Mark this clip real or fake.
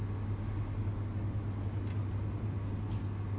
real